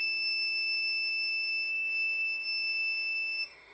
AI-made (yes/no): yes